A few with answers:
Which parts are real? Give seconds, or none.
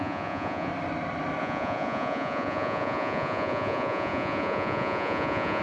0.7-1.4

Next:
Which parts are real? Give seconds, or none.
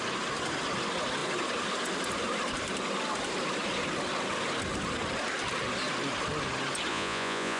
0.0-6.9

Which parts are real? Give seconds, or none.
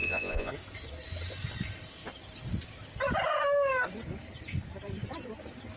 0.5-5.8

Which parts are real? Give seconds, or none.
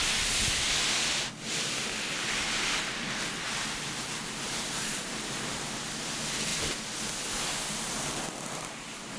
0.0-9.2